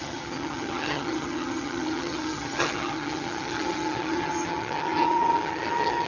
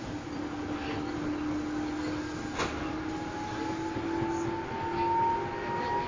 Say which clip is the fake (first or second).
first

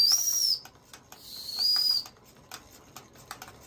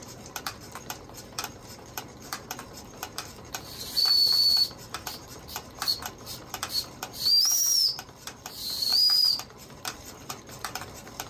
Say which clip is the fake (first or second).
second